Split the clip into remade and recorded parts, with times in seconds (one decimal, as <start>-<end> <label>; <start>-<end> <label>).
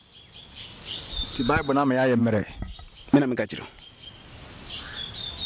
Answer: 0.0-5.5 recorded